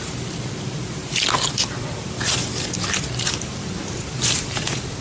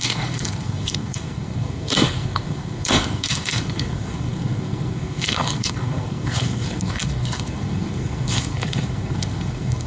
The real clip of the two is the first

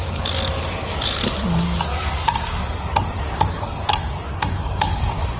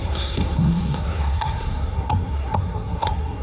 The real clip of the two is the first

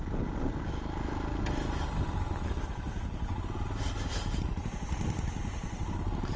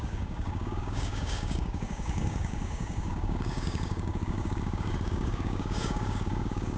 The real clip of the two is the first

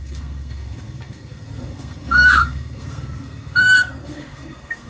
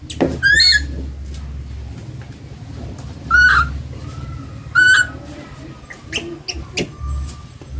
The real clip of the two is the second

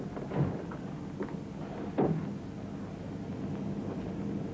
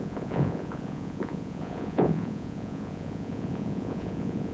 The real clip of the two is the first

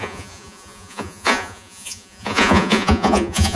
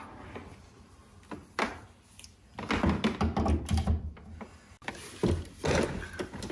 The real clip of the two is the second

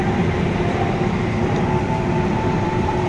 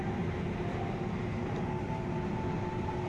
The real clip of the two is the second